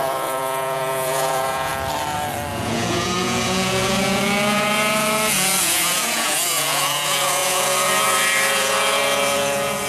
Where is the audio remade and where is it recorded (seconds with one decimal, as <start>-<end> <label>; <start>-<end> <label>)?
0.0-1.7 remade; 1.7-2.5 recorded; 2.5-9.9 remade